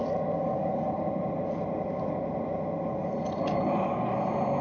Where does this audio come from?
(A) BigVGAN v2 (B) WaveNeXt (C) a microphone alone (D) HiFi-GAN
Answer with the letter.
C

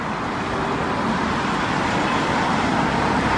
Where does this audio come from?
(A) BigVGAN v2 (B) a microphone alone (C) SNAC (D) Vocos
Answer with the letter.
B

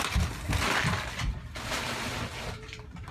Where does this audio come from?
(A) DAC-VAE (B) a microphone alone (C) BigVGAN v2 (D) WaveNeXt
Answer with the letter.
B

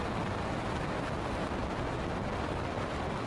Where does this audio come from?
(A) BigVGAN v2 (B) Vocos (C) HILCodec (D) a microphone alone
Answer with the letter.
D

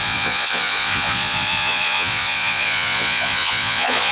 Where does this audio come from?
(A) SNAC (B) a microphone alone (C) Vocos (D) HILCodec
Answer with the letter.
C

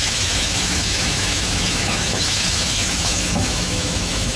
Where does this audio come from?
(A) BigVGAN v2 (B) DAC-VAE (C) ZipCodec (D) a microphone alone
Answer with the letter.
B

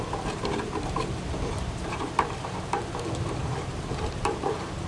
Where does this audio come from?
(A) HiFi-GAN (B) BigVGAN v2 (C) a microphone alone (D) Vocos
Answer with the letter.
B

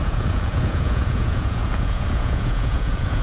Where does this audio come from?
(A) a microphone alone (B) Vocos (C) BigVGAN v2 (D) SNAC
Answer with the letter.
B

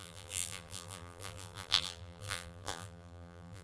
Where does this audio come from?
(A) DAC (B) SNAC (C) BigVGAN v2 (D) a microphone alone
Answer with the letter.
C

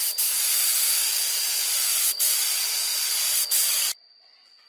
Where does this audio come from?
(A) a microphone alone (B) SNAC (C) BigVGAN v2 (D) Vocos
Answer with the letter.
A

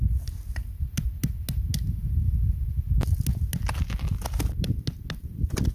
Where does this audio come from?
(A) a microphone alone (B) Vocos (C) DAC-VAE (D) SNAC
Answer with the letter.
A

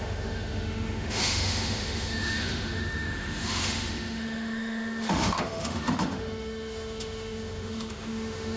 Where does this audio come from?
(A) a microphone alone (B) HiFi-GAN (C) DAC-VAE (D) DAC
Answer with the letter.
C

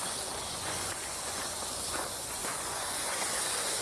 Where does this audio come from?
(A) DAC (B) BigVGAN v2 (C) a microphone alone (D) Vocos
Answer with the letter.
D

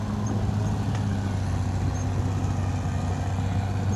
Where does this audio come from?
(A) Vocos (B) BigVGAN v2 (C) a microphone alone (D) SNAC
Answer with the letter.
C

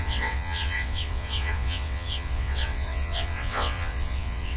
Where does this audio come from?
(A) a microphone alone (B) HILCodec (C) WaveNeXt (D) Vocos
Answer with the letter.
C